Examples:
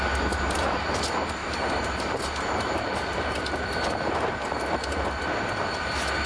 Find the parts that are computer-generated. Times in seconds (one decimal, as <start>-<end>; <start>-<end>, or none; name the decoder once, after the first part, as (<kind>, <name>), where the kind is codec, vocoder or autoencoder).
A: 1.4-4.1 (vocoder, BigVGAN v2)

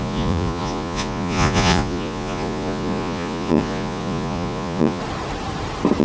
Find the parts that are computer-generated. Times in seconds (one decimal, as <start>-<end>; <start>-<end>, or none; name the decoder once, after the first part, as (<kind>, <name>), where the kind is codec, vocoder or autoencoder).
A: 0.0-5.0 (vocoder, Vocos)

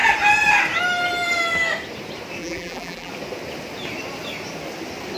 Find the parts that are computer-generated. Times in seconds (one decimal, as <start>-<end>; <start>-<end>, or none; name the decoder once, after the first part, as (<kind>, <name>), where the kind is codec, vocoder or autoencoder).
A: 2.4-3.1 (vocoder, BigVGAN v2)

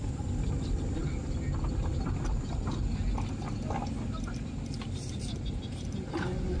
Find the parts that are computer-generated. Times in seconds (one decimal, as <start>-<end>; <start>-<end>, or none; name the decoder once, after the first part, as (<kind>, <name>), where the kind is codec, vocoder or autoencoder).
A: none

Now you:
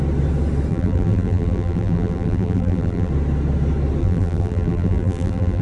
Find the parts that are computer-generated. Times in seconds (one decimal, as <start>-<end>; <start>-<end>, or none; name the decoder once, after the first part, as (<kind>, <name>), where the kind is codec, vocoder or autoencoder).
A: 0.7-3.1 (vocoder, BigVGAN v2); 4.0-5.6